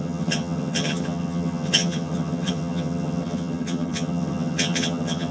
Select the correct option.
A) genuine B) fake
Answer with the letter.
B